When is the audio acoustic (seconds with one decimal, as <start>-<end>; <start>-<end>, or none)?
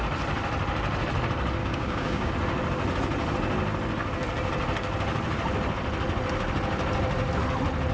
0.0-1.6; 2.3-7.9